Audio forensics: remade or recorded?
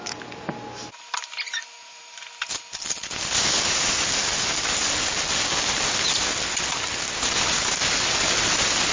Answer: recorded